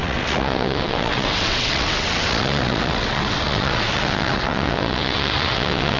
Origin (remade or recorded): remade